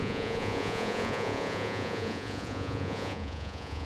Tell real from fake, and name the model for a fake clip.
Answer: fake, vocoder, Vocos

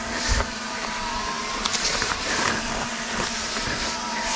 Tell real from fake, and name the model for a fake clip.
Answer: fake, vocoder, BigVGAN v2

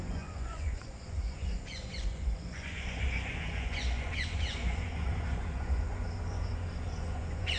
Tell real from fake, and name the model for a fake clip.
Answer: fake, vocoder, Vocos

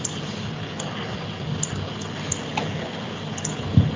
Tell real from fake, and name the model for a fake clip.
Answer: real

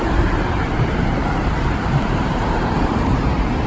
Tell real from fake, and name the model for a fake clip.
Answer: fake, vocoder, BigVGAN v2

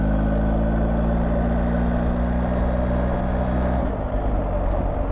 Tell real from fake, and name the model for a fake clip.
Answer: real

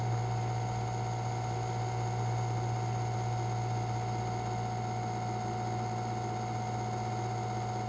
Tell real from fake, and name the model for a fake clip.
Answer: real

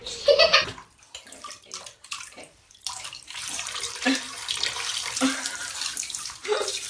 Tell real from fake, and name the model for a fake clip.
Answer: fake, vocoder, BigVGAN v2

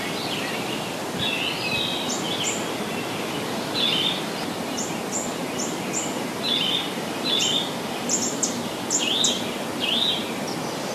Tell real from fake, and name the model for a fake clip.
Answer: real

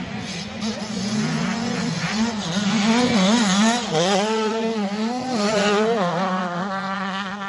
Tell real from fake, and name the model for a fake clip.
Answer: fake, vocoder, Vocos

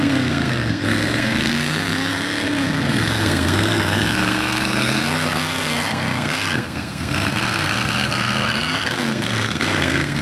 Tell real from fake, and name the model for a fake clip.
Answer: fake, codec, SNAC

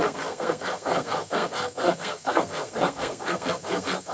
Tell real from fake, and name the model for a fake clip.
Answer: fake, codec, SNAC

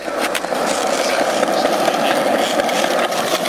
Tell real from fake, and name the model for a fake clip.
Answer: real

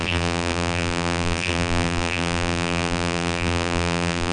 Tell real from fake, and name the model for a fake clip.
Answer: fake, vocoder, BigVGAN v2